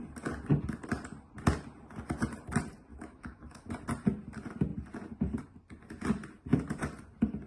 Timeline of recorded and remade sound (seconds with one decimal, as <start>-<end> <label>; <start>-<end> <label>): 0.0-2.9 recorded; 2.9-3.7 remade; 3.7-7.5 recorded